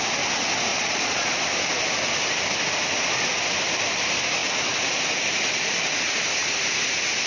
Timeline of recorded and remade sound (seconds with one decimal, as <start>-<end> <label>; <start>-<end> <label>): 0.0-0.7 recorded; 0.7-1.4 remade; 1.4-7.3 recorded